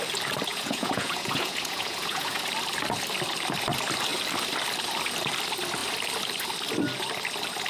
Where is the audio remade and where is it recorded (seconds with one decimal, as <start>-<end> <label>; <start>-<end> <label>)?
0.0-0.5 recorded; 0.5-2.4 remade; 2.4-7.7 recorded